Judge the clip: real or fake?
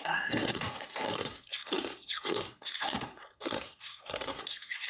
fake